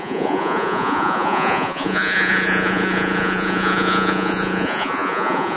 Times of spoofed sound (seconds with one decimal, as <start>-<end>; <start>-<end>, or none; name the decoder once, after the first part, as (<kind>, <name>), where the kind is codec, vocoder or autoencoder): 0.0-5.6 (vocoder, Vocos)